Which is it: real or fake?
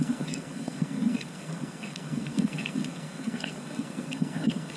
fake